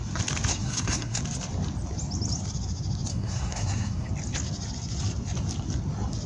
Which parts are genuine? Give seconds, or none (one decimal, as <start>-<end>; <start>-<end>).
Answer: 0.0-0.5; 1.2-3.1; 4.1-6.3